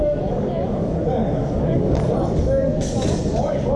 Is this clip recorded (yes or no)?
no